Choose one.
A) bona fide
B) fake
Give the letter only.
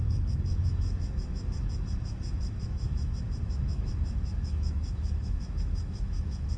B